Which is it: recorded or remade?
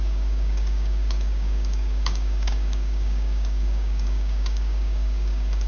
remade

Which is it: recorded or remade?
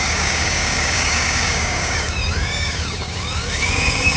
remade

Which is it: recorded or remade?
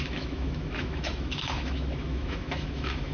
remade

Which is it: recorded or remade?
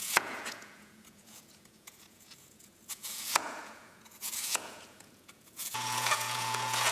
remade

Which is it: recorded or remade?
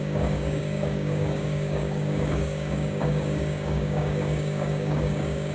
remade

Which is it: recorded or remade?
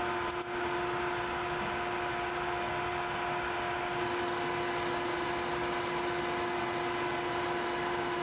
recorded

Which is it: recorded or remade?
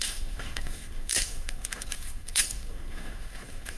remade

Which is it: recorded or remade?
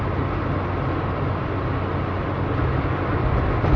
recorded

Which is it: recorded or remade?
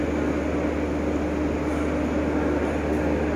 recorded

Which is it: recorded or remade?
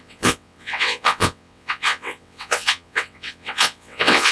remade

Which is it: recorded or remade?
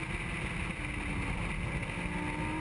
recorded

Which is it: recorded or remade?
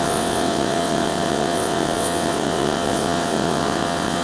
remade